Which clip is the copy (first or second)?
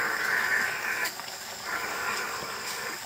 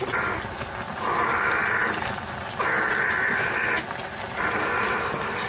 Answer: first